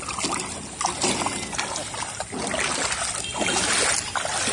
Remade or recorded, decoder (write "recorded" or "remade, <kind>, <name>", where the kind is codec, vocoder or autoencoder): recorded